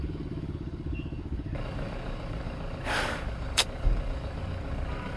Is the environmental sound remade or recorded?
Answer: remade